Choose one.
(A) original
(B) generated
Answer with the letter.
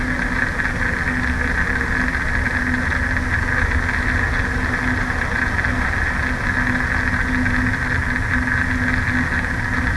A